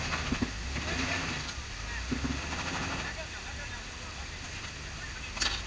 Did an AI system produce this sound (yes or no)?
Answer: no